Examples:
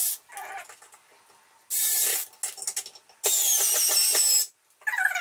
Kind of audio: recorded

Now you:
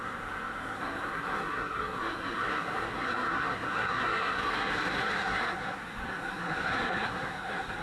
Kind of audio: remade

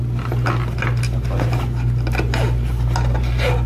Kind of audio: recorded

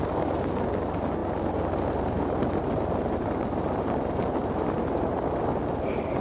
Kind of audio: recorded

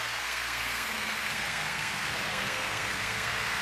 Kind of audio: remade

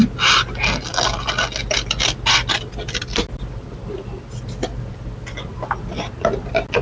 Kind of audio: recorded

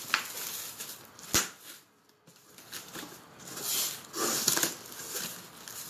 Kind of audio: recorded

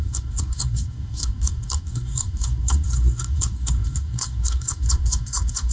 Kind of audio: remade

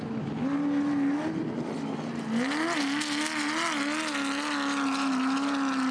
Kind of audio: recorded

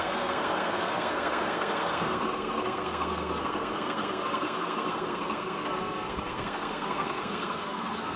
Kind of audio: remade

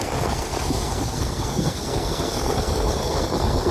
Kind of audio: remade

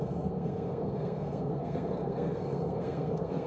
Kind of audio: remade